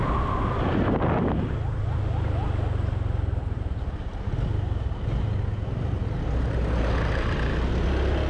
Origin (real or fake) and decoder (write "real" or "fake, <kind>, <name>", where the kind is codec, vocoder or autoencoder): real